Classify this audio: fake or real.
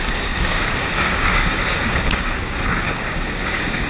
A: fake